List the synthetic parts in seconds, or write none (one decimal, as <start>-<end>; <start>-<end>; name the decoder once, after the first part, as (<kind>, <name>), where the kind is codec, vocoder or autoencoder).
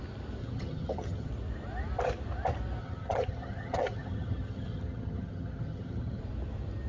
0.4-1.3 (vocoder, HiFi-GAN); 2.8-6.2